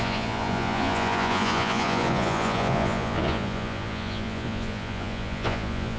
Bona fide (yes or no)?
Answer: no